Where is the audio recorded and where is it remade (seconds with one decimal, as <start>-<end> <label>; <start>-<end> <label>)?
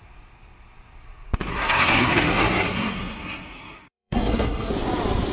0.0-1.5 recorded; 1.5-4.7 remade; 4.7-5.3 recorded